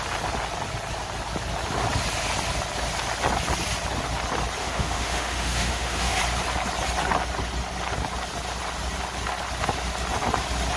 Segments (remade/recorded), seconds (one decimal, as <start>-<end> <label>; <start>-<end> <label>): 0.0-4.6 recorded; 4.6-6.2 remade; 6.2-10.8 recorded